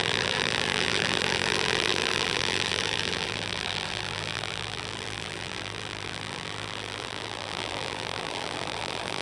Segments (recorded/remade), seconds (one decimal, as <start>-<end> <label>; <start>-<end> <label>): 0.0-9.2 remade